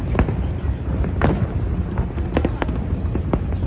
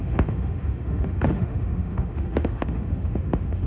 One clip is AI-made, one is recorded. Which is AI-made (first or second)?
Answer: second